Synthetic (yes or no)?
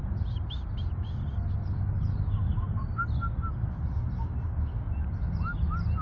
no